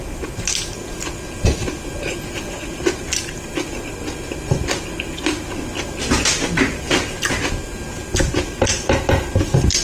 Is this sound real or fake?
real